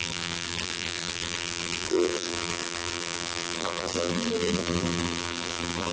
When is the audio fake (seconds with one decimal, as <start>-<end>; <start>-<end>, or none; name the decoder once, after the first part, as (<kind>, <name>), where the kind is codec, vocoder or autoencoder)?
0.0-5.9 (vocoder, BigVGAN v2)